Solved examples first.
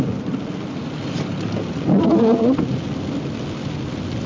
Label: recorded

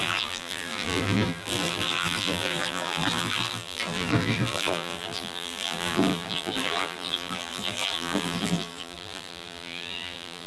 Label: remade